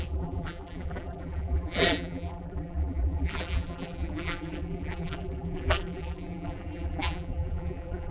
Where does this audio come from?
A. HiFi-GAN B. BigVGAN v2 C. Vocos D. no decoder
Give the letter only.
B